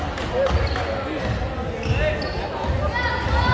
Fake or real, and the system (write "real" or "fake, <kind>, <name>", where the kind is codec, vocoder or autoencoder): real